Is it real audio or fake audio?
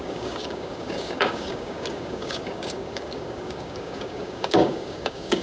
fake